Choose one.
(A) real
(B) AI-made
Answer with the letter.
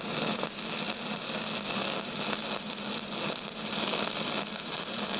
A